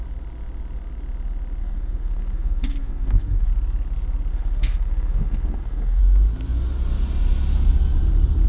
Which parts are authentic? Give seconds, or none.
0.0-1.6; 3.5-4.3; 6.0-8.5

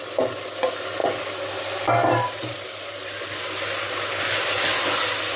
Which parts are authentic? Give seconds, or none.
0.0-5.4